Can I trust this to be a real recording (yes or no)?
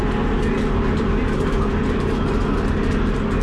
yes